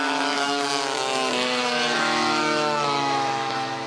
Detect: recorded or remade remade